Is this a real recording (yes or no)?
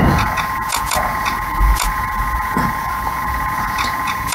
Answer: no